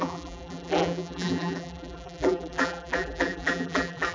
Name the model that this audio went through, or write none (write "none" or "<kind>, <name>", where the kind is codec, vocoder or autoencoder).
vocoder, BigVGAN v2